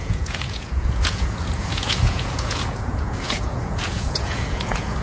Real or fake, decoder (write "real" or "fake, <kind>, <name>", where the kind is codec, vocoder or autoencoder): fake, vocoder, Vocos